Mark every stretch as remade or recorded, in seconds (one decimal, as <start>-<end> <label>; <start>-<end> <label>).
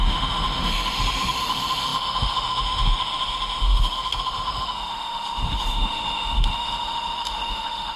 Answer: 0.0-8.0 remade